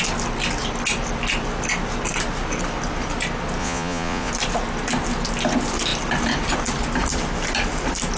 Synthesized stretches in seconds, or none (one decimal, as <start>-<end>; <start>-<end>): 3.6-4.3